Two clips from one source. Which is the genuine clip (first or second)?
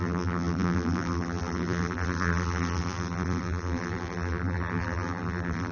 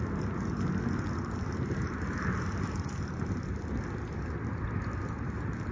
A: second